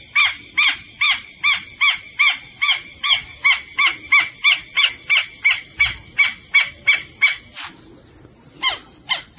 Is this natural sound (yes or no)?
yes